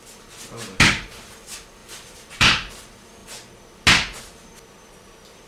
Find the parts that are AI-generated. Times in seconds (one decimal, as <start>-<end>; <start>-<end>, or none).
1.8-2.7